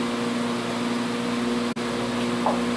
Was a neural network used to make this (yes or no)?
no